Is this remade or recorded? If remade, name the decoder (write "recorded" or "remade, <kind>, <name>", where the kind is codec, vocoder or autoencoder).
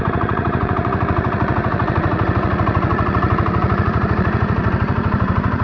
remade, vocoder, Vocos